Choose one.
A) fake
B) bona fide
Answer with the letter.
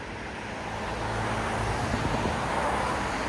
B